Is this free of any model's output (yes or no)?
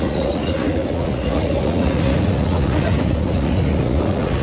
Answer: no